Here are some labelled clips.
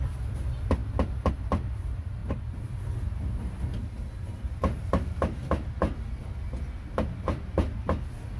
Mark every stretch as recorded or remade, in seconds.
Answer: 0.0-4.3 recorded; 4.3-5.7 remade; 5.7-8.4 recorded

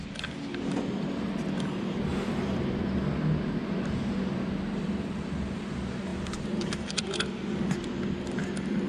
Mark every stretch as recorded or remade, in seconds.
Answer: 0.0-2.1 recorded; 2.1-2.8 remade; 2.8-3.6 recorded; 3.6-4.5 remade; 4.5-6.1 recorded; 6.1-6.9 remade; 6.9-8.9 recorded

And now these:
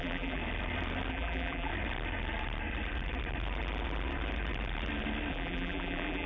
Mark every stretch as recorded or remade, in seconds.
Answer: 0.0-0.4 remade; 0.4-1.1 recorded; 1.1-1.7 remade; 1.7-5.3 recorded; 5.3-6.3 remade

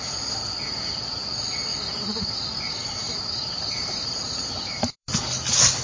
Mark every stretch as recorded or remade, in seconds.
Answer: 0.0-1.7 recorded; 1.7-5.2 remade; 5.2-5.8 recorded